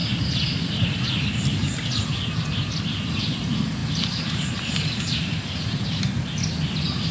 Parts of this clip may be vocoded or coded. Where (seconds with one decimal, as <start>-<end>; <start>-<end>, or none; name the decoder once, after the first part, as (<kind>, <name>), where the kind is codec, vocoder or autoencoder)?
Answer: 3.8-6.0 (vocoder, BigVGAN v2)